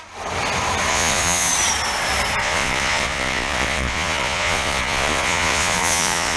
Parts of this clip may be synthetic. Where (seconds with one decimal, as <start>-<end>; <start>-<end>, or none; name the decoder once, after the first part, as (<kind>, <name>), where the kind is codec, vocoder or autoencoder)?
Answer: 0.9-1.5 (vocoder, Vocos); 2.4-6.4